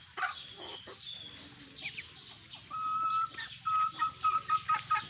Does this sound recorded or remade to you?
recorded